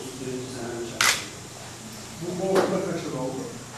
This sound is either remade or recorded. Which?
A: recorded